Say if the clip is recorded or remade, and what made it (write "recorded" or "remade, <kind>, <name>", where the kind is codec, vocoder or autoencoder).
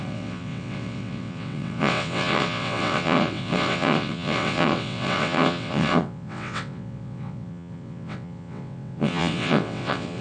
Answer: remade, vocoder, WaveNeXt